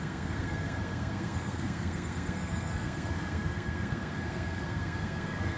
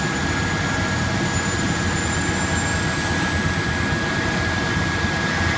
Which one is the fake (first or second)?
first